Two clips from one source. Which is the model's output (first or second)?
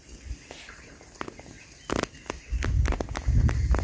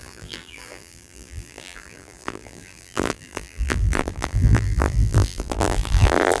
second